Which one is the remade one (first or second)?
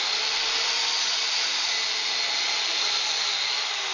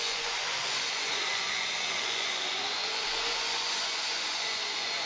second